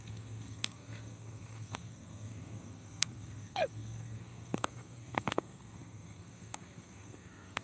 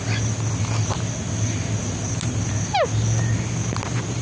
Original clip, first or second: second